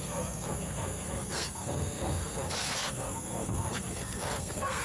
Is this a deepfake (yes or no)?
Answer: yes